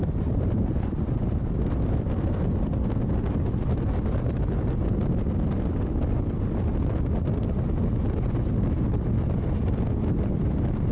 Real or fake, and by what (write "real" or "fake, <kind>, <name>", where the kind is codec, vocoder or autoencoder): real